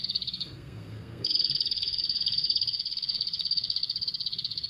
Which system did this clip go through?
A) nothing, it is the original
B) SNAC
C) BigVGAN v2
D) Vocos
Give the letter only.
B